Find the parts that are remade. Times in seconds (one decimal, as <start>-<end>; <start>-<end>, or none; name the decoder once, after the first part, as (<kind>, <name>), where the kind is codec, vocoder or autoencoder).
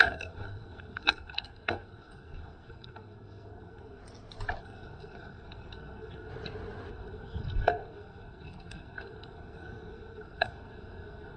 0.0-4.0 (codec, SNAC); 4.6-6.3; 6.9-11.4